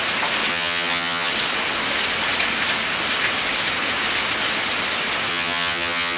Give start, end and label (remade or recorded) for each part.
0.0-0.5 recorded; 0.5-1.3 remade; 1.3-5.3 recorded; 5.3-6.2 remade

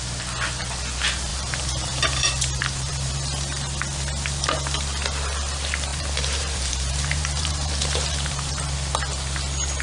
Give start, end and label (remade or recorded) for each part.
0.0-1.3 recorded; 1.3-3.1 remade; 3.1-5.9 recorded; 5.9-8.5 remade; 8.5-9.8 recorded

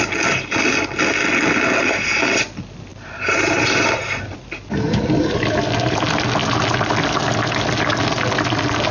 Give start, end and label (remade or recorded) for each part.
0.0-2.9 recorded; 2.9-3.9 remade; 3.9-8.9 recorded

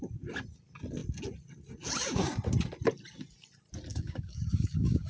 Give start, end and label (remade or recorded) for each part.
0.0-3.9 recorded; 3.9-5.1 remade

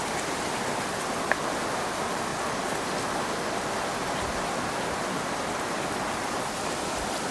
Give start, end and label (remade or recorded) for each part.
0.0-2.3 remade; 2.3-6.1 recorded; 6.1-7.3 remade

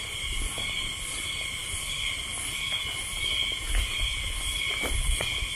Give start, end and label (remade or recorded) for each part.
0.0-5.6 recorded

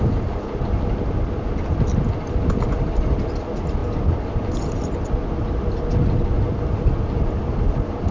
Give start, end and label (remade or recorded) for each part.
0.0-8.1 recorded